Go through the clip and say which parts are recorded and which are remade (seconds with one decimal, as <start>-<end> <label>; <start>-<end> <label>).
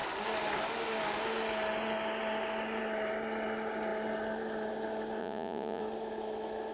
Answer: 0.0-5.2 recorded; 5.2-5.8 remade; 5.8-6.7 recorded